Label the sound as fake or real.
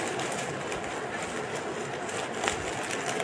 real